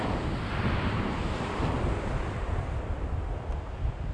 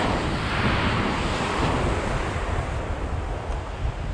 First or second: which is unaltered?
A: second